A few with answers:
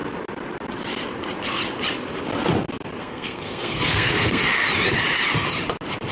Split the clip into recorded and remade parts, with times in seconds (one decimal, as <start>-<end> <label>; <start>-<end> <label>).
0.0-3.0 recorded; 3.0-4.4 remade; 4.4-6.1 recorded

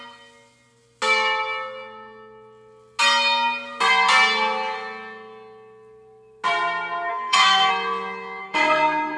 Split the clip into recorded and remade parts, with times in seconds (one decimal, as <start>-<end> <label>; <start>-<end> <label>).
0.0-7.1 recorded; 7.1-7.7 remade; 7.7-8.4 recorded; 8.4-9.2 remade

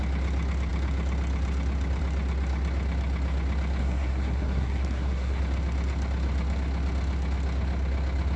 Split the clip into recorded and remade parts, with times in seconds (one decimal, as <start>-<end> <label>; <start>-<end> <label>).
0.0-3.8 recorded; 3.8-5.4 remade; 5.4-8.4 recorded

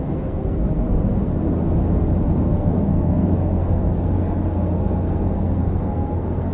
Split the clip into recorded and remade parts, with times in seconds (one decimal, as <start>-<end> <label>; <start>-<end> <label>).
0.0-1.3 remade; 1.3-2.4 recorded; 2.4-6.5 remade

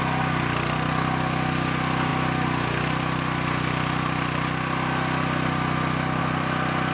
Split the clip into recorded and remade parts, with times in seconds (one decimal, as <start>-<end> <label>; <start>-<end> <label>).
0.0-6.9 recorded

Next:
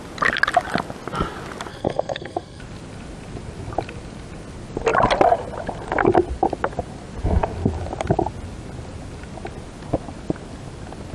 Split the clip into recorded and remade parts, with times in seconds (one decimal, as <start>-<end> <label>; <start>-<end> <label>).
0.0-1.7 recorded; 1.7-2.6 remade; 2.6-11.1 recorded

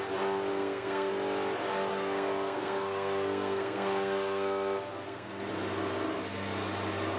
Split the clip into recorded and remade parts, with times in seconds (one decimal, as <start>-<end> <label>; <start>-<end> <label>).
0.0-0.5 recorded; 0.5-1.1 remade; 1.1-1.9 recorded; 1.9-5.5 remade; 5.5-7.2 recorded

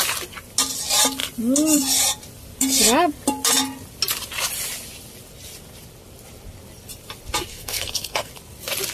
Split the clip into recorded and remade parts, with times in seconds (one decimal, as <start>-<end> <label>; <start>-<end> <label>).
0.0-7.5 recorded; 7.5-8.3 remade; 8.3-8.9 recorded